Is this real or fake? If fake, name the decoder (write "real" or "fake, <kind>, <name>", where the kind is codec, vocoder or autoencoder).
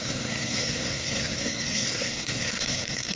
fake, codec, SNAC